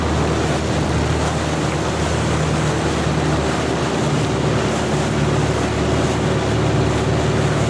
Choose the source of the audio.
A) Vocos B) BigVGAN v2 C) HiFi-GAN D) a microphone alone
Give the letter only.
D